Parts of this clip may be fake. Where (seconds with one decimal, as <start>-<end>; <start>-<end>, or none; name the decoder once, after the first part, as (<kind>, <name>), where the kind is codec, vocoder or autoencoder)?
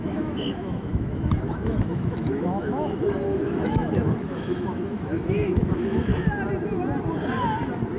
0.0-6.1 (autoencoder, DAC-VAE)